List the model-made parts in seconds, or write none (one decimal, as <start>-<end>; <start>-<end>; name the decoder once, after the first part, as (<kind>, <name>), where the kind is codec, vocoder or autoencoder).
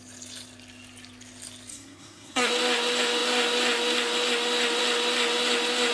1.7-2.5 (codec, SNAC)